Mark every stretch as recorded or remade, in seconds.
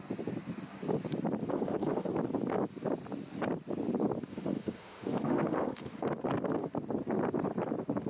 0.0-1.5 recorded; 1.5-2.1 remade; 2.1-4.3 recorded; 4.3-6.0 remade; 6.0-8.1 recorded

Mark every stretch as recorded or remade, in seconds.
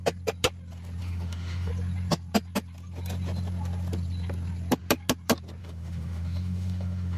0.0-1.0 recorded; 1.0-1.7 remade; 1.7-5.6 recorded; 5.6-7.2 remade